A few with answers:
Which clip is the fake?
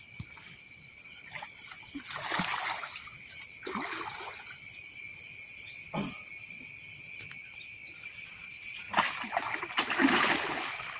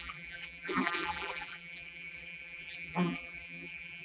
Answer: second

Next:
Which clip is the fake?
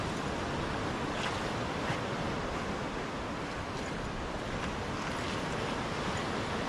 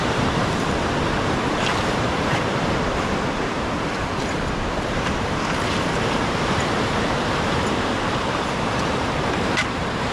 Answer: second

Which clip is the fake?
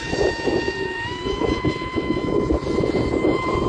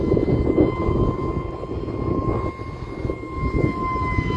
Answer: first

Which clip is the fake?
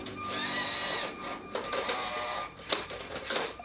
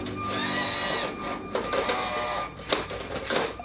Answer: first